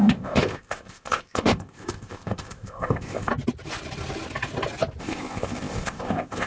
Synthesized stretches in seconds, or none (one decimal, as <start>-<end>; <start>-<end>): 0.0-3.3; 5.0-6.5